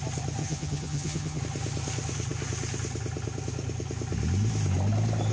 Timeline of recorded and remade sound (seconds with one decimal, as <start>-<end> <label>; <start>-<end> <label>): 0.0-0.4 recorded; 0.4-1.4 remade; 1.4-5.3 recorded